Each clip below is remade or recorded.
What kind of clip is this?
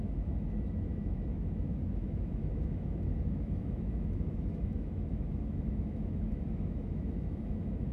remade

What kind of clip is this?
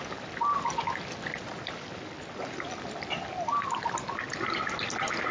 recorded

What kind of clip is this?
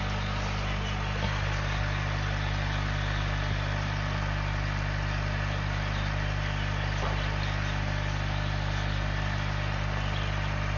recorded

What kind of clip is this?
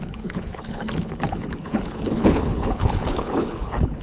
remade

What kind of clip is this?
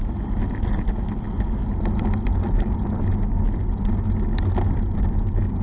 recorded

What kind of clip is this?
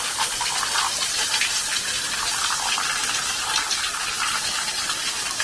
recorded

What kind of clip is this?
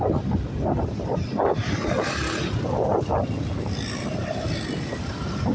recorded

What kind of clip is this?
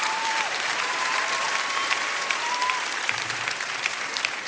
remade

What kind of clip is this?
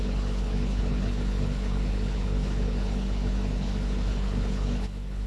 remade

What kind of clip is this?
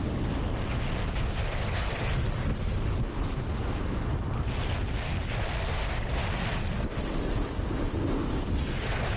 recorded